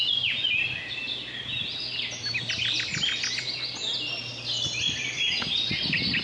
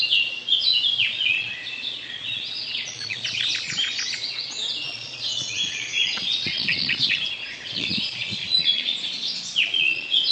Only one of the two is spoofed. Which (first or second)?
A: second